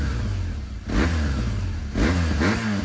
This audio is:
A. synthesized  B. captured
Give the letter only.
B